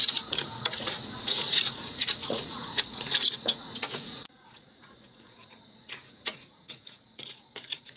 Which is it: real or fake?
fake